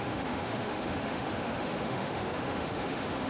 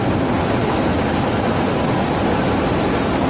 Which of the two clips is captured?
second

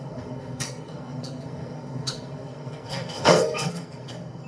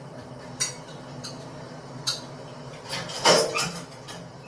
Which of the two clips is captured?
second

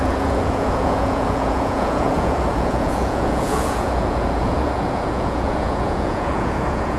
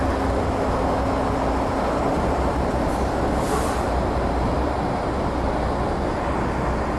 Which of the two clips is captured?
second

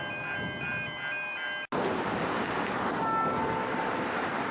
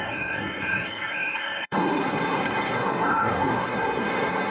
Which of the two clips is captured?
first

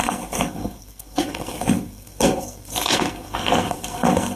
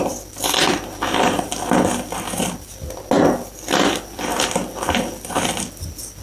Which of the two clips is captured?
second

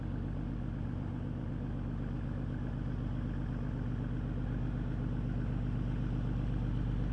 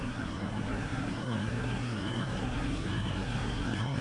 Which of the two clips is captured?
first